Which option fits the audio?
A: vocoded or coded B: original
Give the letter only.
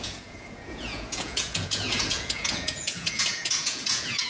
A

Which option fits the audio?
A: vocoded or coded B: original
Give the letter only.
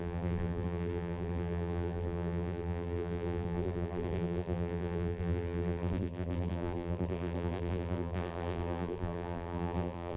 A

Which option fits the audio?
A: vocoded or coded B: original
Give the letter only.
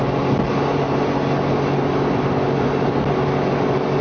B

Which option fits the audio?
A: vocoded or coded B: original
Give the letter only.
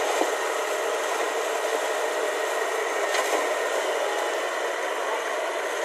B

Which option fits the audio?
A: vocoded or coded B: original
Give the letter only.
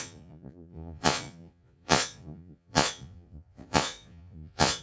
A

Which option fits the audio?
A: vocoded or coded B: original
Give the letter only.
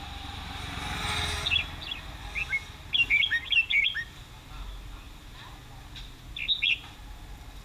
B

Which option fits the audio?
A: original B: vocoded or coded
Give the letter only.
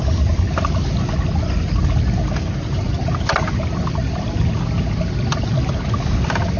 A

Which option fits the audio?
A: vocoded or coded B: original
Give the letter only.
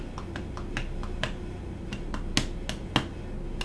B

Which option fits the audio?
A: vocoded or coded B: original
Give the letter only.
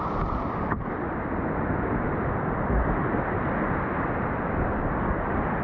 B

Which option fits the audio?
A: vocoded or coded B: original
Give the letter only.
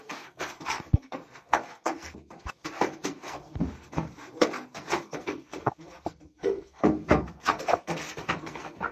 A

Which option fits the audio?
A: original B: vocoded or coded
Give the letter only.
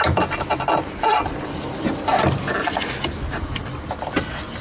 A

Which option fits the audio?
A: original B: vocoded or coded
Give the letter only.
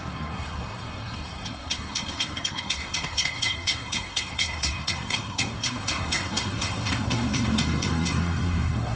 B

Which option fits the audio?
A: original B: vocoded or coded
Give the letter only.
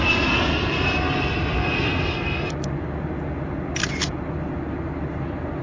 A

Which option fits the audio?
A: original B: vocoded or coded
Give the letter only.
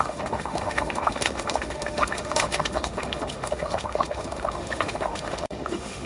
B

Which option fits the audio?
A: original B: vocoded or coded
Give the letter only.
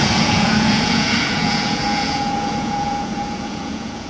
B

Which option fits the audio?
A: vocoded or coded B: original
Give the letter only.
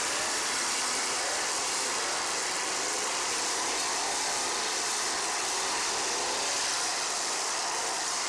A